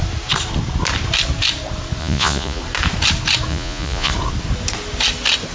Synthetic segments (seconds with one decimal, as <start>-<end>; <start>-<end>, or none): 2.0-2.6; 3.5-4.1